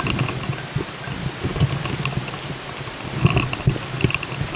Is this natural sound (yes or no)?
yes